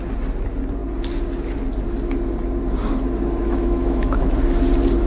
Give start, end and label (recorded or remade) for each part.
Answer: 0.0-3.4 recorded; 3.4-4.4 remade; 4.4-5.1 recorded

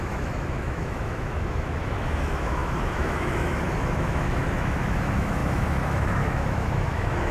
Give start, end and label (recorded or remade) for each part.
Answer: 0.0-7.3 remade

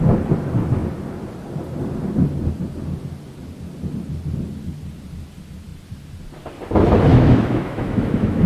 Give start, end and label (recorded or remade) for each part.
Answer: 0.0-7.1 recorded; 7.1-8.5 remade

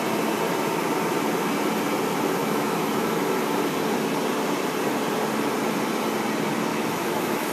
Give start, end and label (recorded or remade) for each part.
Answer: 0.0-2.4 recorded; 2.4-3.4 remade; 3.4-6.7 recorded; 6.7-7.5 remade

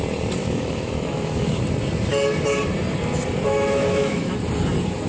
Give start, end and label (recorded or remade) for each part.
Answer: 0.0-0.4 recorded; 0.4-1.6 remade; 1.6-3.5 recorded; 3.5-4.4 remade; 4.4-5.1 recorded

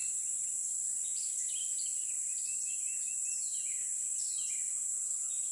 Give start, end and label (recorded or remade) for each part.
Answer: 0.0-5.5 recorded

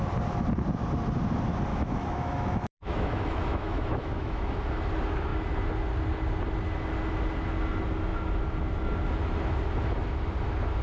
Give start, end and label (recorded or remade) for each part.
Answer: 0.0-1.7 recorded; 1.7-4.5 remade; 4.5-10.8 recorded